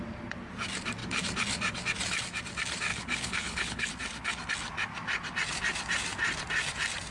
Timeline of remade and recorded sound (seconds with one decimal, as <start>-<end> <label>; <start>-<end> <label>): 0.0-2.9 recorded; 2.9-3.9 remade; 3.9-7.1 recorded